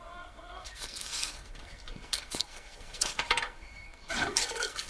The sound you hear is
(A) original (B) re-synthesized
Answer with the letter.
B